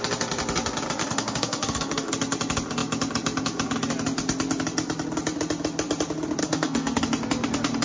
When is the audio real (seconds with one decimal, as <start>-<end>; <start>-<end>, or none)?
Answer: 0.0-1.0; 2.1-6.4; 7.0-7.8